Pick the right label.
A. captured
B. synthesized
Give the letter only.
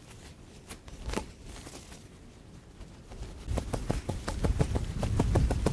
A